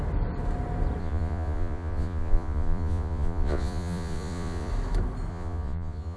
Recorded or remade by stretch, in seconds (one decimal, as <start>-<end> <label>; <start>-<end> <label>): 0.0-1.0 recorded; 1.0-4.7 remade; 4.7-5.3 recorded; 5.3-6.2 remade